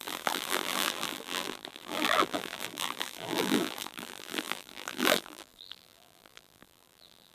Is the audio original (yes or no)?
no